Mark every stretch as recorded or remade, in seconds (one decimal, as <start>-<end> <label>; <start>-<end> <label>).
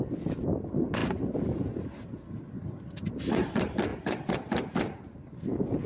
0.0-1.0 recorded; 1.0-3.1 remade; 3.1-5.9 recorded